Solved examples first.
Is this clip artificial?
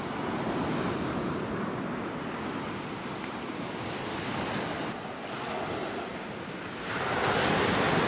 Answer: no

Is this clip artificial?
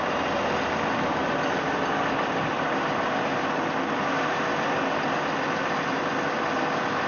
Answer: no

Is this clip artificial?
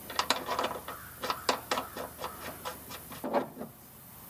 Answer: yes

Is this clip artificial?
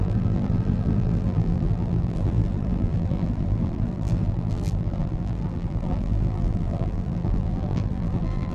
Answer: yes